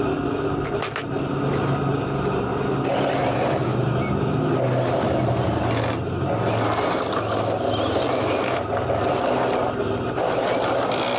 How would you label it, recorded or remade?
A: recorded